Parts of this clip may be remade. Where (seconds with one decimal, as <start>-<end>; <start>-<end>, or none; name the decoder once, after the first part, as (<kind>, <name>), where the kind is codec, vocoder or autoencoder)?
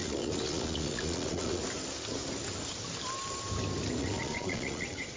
0.0-1.6 (vocoder, Vocos); 4.0-5.2